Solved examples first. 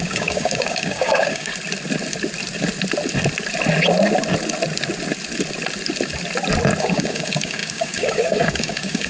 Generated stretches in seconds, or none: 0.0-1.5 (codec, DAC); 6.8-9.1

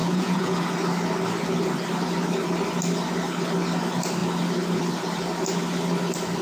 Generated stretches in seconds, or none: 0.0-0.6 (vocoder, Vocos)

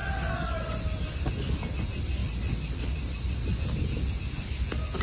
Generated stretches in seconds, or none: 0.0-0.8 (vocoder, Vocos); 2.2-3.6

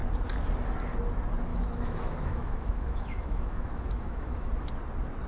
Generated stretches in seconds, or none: 1.5-4.7 (autoencoder, DAC-VAE)

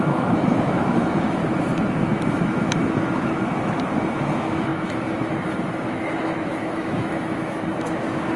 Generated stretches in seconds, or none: 0.0-1.4 (autoencoder, DAC-VAE); 2.3-8.4

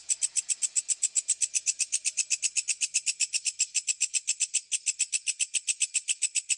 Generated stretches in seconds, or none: none